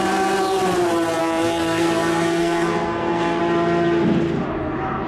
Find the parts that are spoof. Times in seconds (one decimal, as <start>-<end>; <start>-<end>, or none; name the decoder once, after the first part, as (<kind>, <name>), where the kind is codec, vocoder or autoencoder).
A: 1.2-3.4 (codec, SNAC)